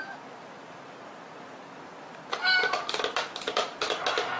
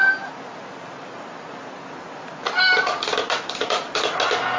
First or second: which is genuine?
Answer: second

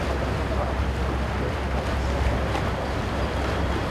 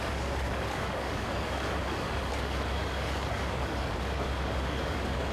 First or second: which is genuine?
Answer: first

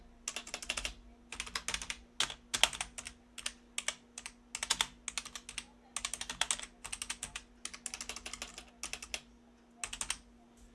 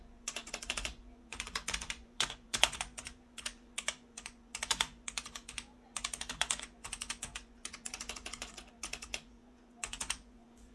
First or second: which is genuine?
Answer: first